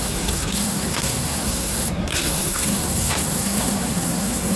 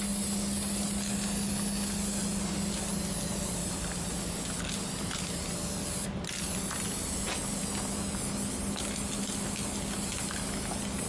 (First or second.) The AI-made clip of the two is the first